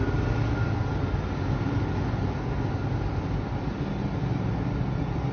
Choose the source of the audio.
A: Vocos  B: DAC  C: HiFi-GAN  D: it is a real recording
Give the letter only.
D